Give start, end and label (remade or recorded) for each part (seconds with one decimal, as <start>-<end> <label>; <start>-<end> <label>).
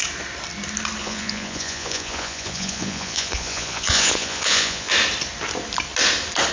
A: 0.0-1.0 recorded; 1.0-4.9 remade; 4.9-6.5 recorded